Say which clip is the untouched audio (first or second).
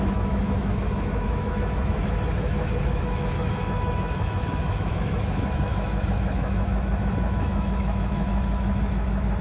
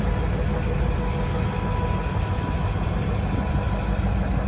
second